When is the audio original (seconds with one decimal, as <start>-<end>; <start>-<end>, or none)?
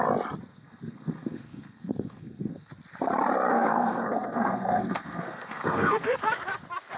0.0-0.5; 2.7-3.5; 6.2-7.0